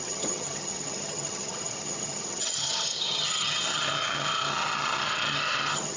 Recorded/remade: remade